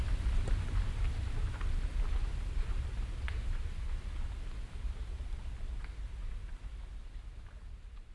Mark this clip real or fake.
real